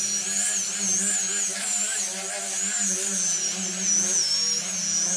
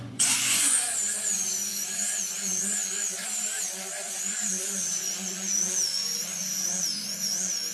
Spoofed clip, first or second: second